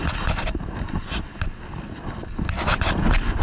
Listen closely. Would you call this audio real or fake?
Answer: real